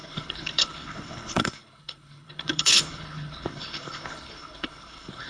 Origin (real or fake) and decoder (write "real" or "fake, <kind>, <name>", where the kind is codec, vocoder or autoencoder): fake, codec, HILCodec